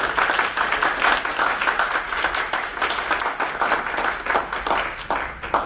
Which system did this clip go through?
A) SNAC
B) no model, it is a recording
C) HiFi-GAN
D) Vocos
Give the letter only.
B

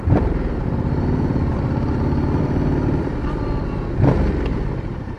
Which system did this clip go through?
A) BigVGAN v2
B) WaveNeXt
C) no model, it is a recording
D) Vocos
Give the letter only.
A